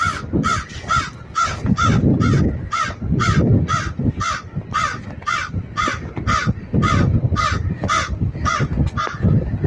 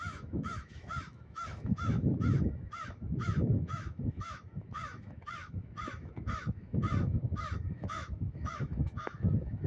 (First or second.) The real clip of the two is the first